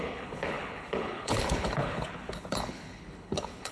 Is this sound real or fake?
fake